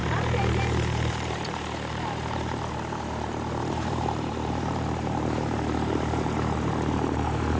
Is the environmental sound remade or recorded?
remade